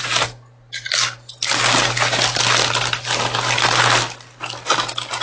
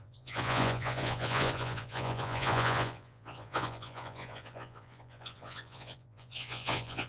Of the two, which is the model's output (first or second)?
second